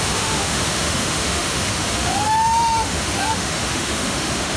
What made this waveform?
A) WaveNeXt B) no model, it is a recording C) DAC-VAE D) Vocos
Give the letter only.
C